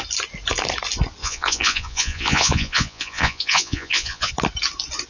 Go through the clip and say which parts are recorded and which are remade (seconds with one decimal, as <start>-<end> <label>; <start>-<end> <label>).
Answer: 0.0-1.2 recorded; 1.2-4.3 remade; 4.3-5.1 recorded